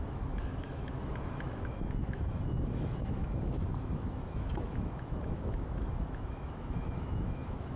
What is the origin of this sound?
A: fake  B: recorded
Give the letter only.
A